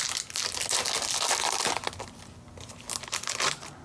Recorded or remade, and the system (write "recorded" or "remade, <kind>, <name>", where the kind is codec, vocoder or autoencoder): recorded